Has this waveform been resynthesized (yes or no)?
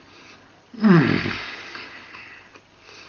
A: no